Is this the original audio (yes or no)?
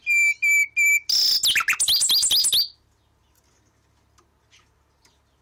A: yes